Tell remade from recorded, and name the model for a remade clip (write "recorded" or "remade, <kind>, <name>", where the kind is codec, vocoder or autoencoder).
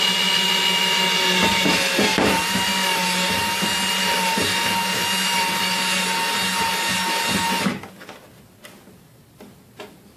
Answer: recorded